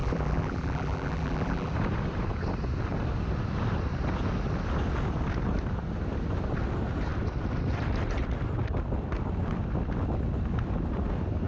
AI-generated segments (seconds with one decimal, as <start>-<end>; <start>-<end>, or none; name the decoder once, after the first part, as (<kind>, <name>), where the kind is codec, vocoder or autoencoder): 0.0-1.7 (vocoder, BigVGAN v2)